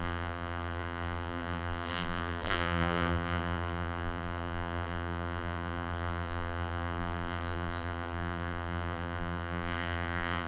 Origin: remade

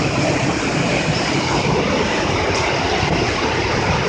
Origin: recorded